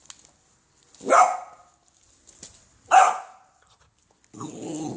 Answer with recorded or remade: recorded